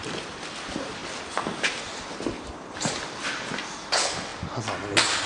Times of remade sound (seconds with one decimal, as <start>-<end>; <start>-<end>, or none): 0.0-1.0; 1.8-4.3